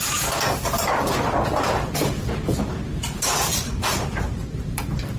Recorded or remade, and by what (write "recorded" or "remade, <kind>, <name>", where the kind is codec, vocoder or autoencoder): remade, vocoder, BigVGAN v2